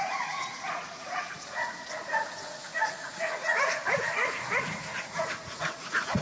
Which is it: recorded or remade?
remade